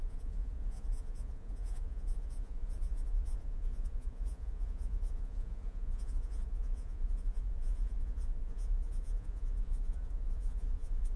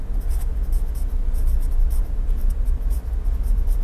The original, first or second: second